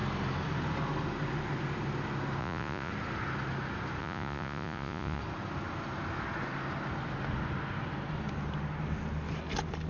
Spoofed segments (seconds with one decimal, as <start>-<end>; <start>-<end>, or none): 2.4-2.9; 4.0-5.2